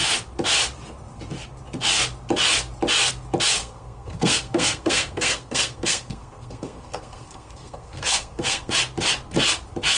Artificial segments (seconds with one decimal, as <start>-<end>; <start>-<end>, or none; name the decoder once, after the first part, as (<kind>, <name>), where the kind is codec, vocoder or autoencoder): 3.6-8.7 (codec, SNAC)